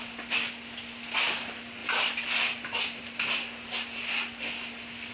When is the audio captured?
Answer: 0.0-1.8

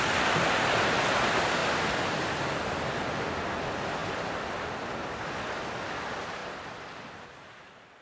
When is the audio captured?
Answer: 0.0-1.6; 2.3-8.0

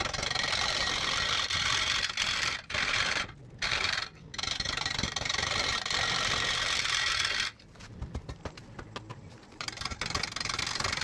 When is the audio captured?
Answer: 0.0-9.1; 10.0-11.0